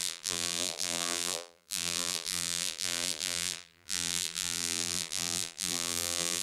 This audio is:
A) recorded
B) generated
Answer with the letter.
B